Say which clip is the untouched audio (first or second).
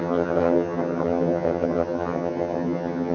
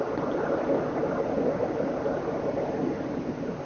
second